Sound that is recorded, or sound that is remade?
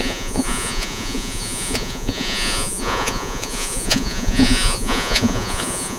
remade